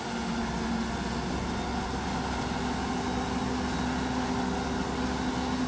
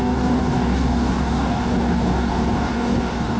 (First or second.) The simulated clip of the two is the second